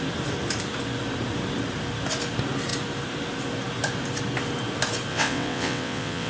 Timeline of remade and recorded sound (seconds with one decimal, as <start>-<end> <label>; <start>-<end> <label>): 0.0-5.1 recorded; 5.1-6.3 remade